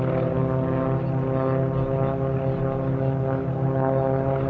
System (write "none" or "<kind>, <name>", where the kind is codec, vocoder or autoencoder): none